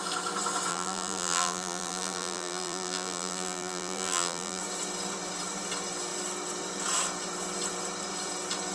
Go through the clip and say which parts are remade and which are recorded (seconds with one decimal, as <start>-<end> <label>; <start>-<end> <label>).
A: 0.0-0.7 recorded; 0.7-4.6 remade; 4.6-8.7 recorded

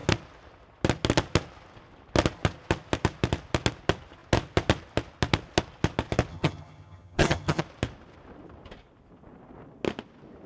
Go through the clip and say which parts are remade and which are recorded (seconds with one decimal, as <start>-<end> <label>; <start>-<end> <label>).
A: 0.0-6.3 recorded; 6.3-7.6 remade; 7.6-10.5 recorded

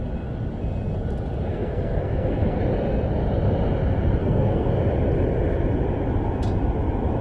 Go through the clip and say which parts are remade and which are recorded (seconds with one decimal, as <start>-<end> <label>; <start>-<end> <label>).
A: 0.0-1.5 recorded; 1.5-2.6 remade; 2.6-4.2 recorded; 4.2-4.7 remade; 4.7-7.2 recorded

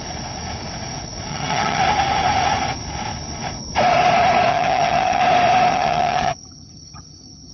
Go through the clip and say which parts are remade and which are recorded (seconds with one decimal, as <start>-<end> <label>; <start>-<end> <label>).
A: 0.0-1.3 recorded; 1.3-1.8 remade; 1.8-4.5 recorded; 4.5-5.2 remade; 5.2-5.7 recorded; 5.7-7.5 remade

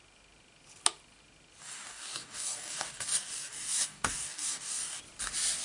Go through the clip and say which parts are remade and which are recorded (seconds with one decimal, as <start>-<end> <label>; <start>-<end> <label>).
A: 0.0-1.6 recorded; 1.6-5.0 remade; 5.0-5.6 recorded

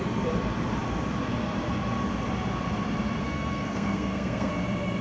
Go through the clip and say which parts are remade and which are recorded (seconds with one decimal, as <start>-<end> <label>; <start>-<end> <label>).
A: 0.0-3.2 recorded; 3.2-4.5 remade; 4.5-5.0 recorded

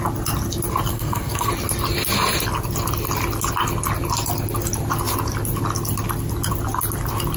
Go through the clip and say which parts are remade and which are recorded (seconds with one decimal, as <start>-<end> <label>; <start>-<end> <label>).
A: 0.0-0.9 recorded; 0.9-1.5 remade; 1.5-7.4 recorded

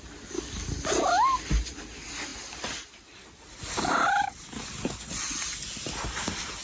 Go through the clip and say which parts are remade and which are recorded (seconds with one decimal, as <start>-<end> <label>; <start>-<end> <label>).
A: 0.0-6.6 recorded